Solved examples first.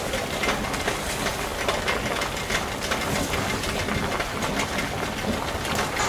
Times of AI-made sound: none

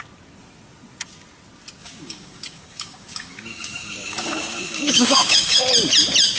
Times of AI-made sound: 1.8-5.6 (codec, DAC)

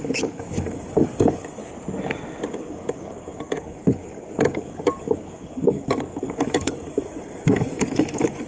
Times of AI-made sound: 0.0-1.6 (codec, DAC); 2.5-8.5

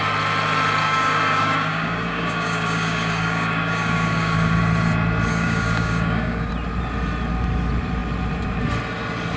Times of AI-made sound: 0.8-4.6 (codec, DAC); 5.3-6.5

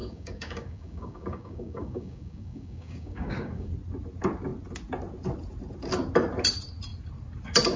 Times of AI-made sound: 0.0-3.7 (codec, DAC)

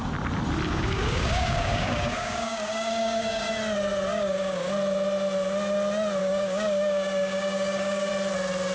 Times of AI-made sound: 0.7-3.5 (codec, DAC); 4.1-4.7; 6.2-8.1